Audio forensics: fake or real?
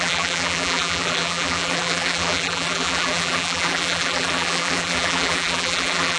fake